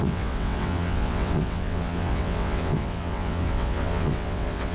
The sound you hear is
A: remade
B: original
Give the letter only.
A